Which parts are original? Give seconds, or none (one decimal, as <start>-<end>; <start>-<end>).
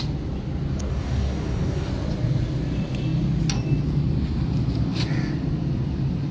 0.0-0.9; 1.9-6.3